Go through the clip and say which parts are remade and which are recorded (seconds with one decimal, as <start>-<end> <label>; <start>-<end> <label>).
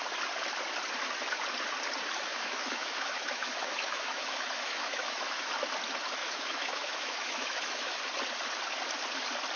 0.0-2.3 recorded; 2.3-5.5 remade; 5.5-6.2 recorded; 6.2-8.0 remade; 8.0-9.6 recorded